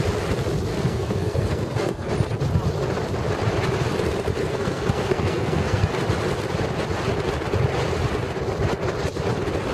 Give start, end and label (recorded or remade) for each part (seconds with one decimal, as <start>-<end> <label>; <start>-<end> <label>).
0.0-0.7 recorded; 0.7-2.1 remade; 2.1-4.4 recorded; 4.4-5.9 remade; 5.9-9.7 recorded

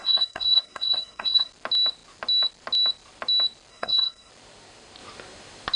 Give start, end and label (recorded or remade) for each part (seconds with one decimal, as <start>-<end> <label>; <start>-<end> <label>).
0.0-1.5 remade; 1.5-3.7 recorded; 3.7-4.3 remade; 4.3-5.8 recorded

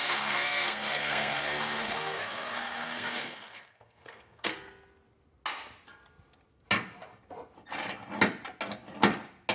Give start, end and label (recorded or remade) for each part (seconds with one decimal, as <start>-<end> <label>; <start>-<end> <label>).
0.0-4.5 remade; 4.5-9.5 recorded

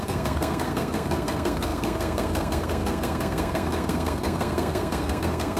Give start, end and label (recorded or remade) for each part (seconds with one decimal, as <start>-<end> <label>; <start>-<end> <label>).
0.0-5.6 remade

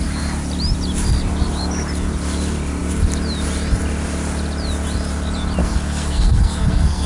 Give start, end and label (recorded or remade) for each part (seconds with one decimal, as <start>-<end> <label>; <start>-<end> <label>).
0.0-5.6 recorded; 5.6-7.1 remade

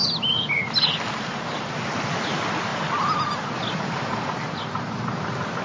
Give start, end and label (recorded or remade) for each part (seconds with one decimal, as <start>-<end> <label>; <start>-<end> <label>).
0.0-5.6 recorded